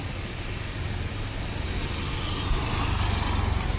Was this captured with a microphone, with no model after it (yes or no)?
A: yes